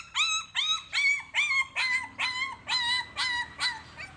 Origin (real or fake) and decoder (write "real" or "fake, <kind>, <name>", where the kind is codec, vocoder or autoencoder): real